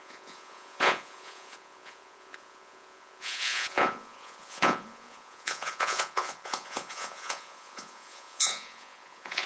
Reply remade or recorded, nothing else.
remade